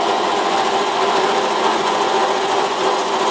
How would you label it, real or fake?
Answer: fake